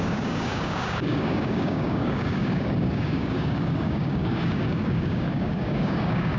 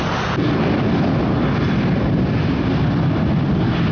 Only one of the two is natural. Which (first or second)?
second